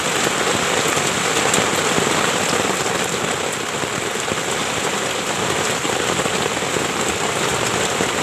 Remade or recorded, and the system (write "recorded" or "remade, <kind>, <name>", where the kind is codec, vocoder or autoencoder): recorded